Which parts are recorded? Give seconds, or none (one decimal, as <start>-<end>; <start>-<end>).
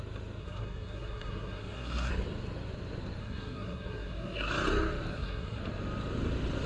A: 0.0-0.4; 2.1-3.2; 4.5-5.1; 5.6-6.7